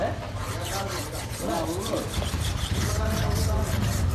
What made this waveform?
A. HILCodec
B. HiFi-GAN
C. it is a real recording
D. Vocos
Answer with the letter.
C